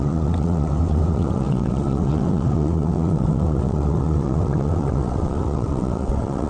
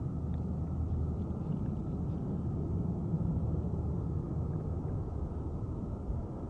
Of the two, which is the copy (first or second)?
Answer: first